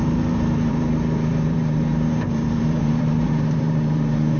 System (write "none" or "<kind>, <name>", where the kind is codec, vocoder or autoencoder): vocoder, BigVGAN v2